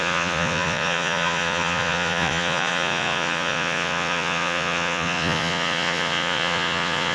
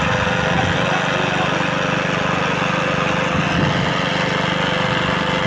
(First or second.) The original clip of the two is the second